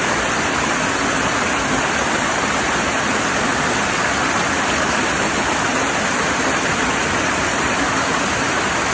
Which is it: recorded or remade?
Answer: recorded